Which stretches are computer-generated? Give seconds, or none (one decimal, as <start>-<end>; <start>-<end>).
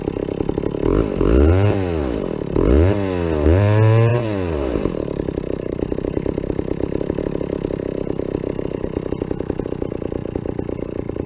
4.1-7.2